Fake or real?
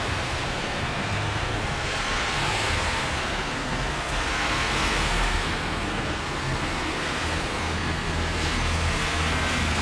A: fake